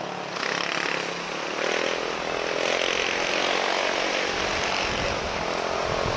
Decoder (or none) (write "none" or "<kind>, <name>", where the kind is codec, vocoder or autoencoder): none